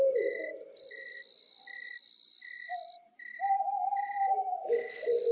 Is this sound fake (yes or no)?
no